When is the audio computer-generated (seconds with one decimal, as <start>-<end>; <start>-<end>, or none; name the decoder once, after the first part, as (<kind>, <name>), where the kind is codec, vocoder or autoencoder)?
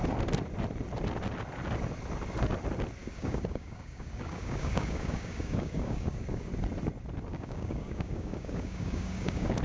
3.0-6.5 (codec, DAC); 7.3-9.6